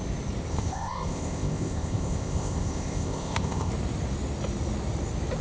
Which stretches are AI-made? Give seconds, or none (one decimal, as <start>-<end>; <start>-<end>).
0.5-3.7